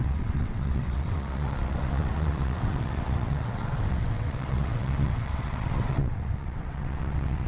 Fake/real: fake